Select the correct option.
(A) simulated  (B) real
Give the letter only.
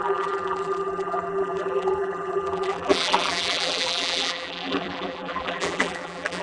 A